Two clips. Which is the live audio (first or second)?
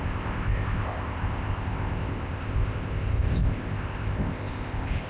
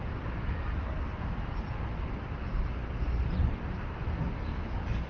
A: second